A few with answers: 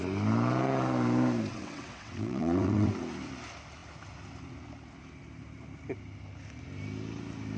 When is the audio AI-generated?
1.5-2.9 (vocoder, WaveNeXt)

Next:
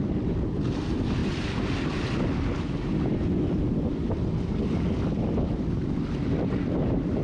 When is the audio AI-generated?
none

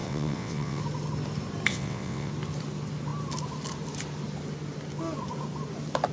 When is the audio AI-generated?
0.0-0.8 (vocoder, WaveNeXt); 1.7-2.3

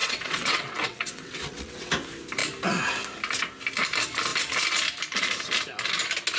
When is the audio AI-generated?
0.0-1.9 (vocoder, WaveNeXt)